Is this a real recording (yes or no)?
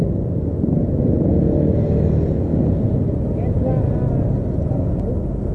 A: yes